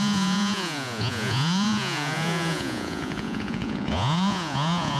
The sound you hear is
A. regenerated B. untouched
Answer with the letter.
A